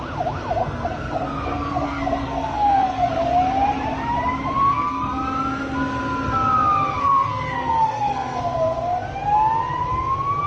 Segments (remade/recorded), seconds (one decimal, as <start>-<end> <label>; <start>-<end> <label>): 0.0-0.6 recorded; 0.6-3.1 remade; 3.1-4.6 recorded; 4.6-5.1 remade; 5.1-7.0 recorded; 7.0-8.4 remade; 8.4-10.5 recorded